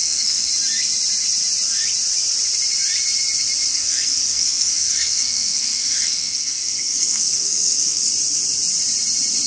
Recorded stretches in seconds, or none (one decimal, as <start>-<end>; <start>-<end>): 0.5-3.7; 8.1-9.5